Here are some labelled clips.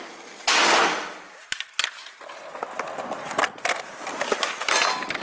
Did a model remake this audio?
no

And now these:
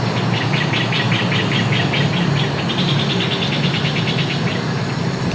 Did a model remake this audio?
no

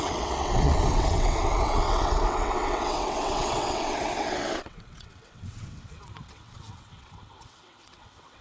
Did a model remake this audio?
yes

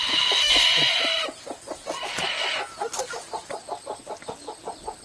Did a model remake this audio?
no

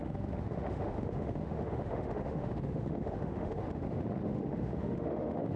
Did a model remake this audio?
yes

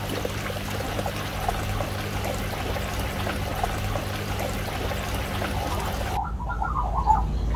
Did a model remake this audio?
no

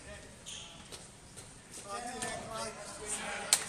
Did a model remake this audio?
no